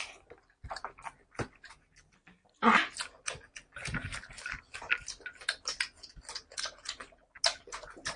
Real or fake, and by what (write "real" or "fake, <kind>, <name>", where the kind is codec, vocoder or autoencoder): real